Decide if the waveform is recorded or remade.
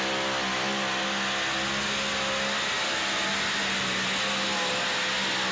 recorded